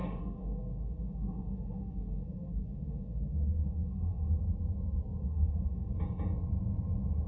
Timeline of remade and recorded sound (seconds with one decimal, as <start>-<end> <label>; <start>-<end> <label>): 0.0-4.4 remade; 4.4-5.2 recorded; 5.2-5.9 remade; 5.9-7.3 recorded